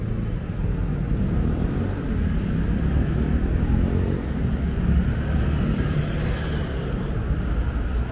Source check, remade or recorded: recorded